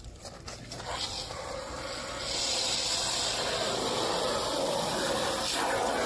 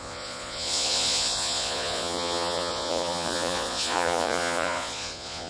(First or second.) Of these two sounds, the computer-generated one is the second